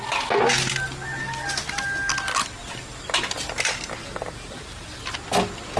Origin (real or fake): real